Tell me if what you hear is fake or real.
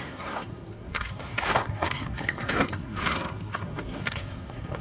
fake